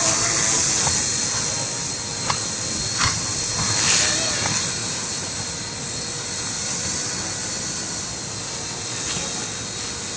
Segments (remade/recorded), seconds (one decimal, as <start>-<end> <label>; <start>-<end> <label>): 0.0-10.2 recorded